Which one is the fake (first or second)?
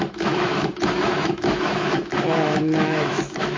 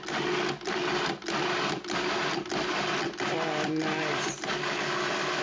first